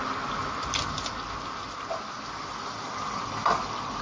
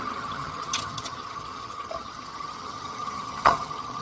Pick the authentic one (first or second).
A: first